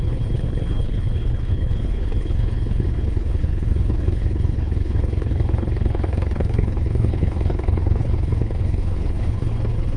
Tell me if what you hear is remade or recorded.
remade